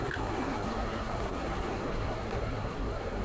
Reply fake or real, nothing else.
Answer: fake